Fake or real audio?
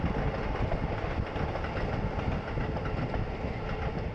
real